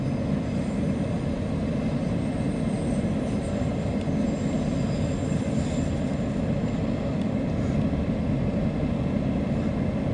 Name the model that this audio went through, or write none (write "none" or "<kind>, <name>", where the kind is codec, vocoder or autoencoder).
none